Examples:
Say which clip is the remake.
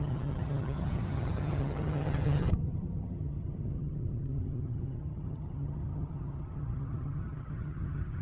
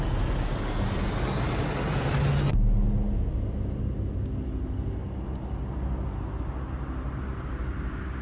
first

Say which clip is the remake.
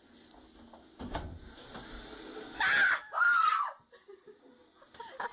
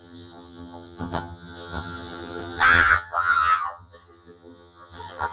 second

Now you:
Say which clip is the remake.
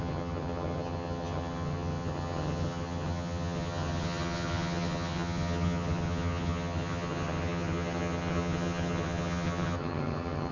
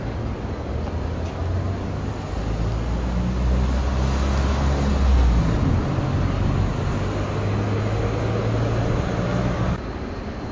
first